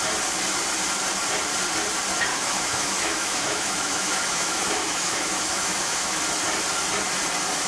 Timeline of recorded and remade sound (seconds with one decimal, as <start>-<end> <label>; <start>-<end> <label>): 0.0-2.3 recorded; 2.3-6.2 remade; 6.2-7.7 recorded